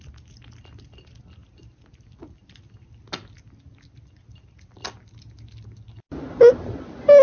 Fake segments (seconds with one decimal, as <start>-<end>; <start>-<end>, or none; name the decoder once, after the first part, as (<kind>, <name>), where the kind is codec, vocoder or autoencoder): none

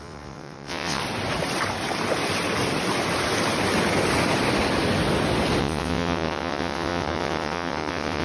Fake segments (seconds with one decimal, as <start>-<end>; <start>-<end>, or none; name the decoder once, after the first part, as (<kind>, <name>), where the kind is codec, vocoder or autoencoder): 0.0-1.0 (vocoder, WaveNeXt); 5.6-8.2